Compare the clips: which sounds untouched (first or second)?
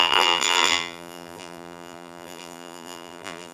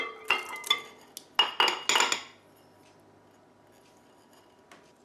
second